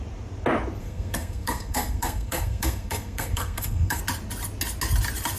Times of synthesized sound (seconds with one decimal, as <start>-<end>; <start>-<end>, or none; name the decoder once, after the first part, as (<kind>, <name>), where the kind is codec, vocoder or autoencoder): 0.8-4.0 (codec, SNAC)